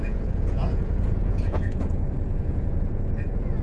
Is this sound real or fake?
fake